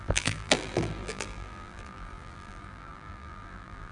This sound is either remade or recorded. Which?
remade